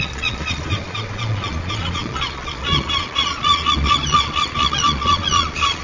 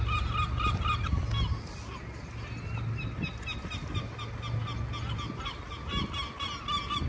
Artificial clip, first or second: first